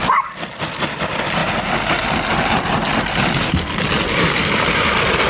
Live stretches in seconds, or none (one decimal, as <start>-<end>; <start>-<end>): 0.0-5.3